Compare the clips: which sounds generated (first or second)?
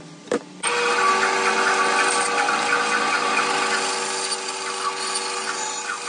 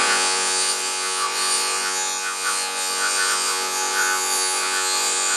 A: second